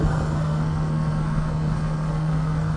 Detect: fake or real fake